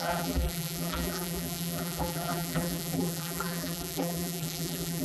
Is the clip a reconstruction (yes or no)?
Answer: yes